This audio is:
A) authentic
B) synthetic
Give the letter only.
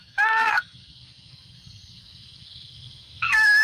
B